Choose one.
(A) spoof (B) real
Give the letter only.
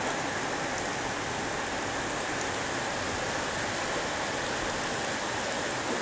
B